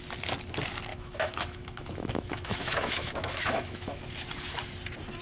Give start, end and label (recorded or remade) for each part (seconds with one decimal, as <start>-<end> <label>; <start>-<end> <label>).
0.0-0.9 recorded; 0.9-4.0 remade; 4.0-5.2 recorded